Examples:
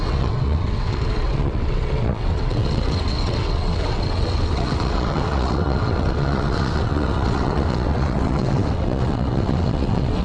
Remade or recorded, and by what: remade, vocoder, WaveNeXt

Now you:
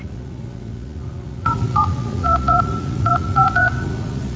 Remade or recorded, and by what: remade, vocoder, Vocos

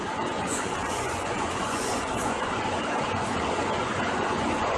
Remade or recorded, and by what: remade, vocoder, Vocos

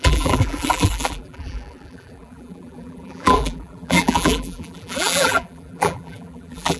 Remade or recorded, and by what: remade, vocoder, BigVGAN v2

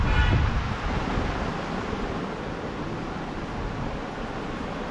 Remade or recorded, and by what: recorded